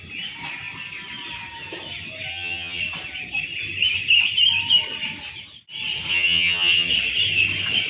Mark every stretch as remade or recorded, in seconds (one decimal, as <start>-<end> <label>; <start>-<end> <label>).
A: 0.0-2.3 recorded; 2.3-2.8 remade; 2.8-6.1 recorded; 6.1-6.9 remade; 6.9-7.9 recorded